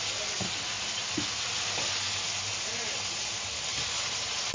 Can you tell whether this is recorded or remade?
recorded